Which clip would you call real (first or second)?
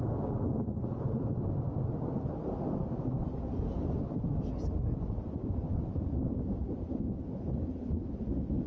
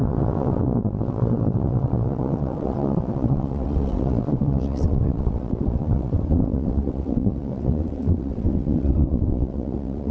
first